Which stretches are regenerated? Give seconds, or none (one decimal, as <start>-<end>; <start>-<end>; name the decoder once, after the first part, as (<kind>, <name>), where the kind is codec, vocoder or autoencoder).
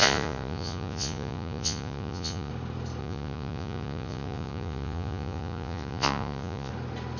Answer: 0.0-2.5 (vocoder, Vocos); 3.0-6.7